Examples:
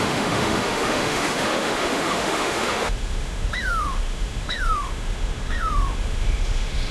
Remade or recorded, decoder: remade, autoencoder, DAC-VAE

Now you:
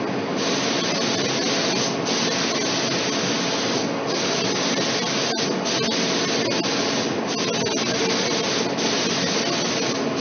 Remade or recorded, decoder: recorded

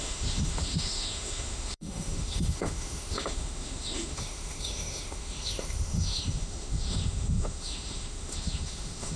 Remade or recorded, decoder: remade, autoencoder, DAC-VAE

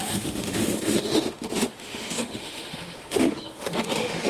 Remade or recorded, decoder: remade, autoencoder, DAC-VAE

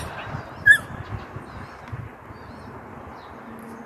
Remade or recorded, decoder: recorded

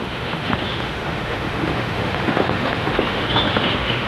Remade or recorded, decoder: remade, autoencoder, DAC-VAE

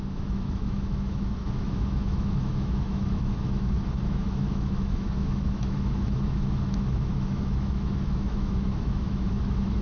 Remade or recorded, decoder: remade, autoencoder, DAC-VAE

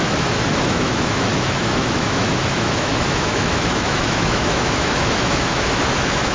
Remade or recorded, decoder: remade, autoencoder, DAC-VAE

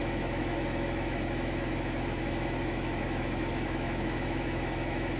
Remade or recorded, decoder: remade, autoencoder, DAC-VAE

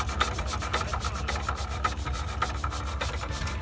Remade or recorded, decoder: recorded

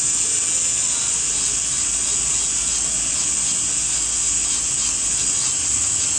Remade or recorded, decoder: recorded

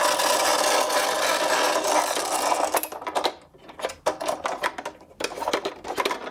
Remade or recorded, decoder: recorded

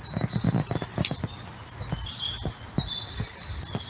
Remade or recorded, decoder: recorded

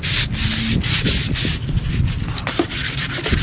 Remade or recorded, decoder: recorded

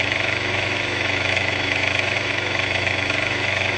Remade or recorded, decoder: remade, autoencoder, DAC-VAE